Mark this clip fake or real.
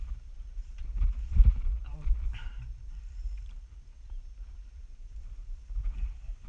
fake